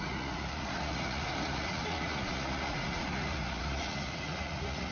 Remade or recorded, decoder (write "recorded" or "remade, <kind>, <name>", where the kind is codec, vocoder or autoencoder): remade, vocoder, Vocos